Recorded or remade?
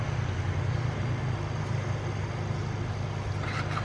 recorded